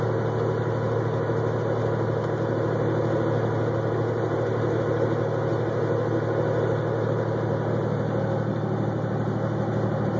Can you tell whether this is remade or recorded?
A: recorded